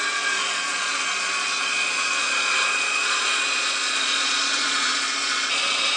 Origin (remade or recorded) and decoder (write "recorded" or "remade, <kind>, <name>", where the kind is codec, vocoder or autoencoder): remade, vocoder, Vocos